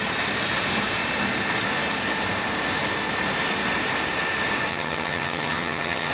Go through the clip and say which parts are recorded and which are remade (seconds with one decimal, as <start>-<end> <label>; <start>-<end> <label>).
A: 0.0-4.7 recorded; 4.7-6.1 remade